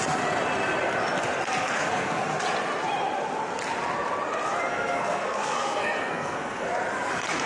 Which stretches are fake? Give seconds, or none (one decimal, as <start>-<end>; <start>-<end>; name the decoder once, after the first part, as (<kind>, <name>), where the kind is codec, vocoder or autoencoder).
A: 1.6-2.2 (codec, SNAC); 4.7-6.7

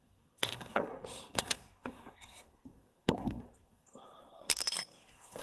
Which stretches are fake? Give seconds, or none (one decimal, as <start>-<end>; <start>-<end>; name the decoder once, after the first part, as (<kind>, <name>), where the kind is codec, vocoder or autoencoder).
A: 0.0-5.4 (codec, SNAC)

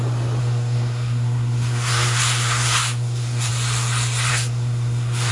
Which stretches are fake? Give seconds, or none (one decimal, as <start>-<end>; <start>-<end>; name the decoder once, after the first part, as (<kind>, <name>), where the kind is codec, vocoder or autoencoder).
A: 0.4-3.5 (codec, SNAC); 4.3-5.3

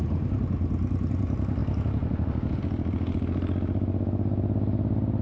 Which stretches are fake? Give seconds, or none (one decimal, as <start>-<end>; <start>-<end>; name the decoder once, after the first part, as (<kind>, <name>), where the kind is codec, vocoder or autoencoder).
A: none

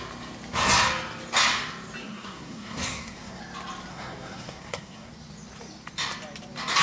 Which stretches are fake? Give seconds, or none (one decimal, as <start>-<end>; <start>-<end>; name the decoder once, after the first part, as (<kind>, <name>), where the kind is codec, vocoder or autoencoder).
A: 2.0-3.4 (codec, SNAC); 3.9-5.1

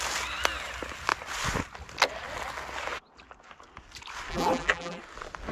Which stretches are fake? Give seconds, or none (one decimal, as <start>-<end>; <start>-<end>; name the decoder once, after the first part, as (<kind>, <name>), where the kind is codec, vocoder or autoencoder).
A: 4.3-5.0 (vocoder, BigVGAN v2)